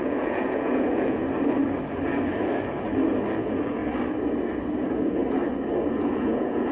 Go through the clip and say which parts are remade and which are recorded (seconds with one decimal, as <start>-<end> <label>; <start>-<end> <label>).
0.0-1.2 remade; 1.2-3.4 recorded; 3.4-3.8 remade; 3.8-4.8 recorded; 4.8-5.2 remade; 5.2-5.9 recorded; 5.9-6.7 remade